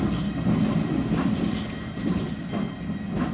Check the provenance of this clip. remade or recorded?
recorded